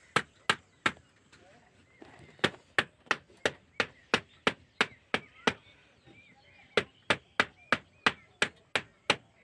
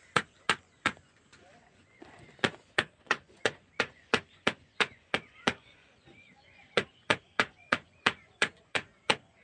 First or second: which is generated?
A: second